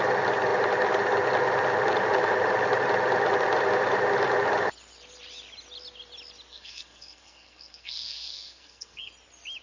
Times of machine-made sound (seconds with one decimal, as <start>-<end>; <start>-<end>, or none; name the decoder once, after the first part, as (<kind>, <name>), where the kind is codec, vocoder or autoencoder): 6.5-9.1 (codec, SNAC)